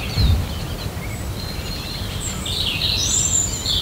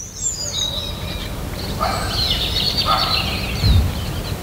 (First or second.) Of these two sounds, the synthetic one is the first